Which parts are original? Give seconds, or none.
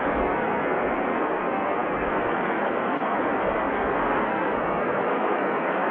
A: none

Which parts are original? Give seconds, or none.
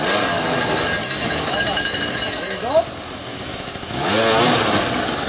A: 0.0-1.2; 2.6-3.3; 4.1-5.3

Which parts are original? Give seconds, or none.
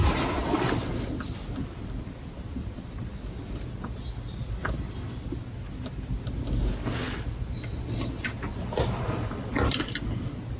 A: 0.0-8.5; 9.8-10.6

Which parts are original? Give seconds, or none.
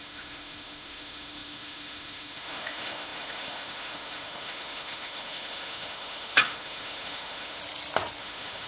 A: 7.6-8.2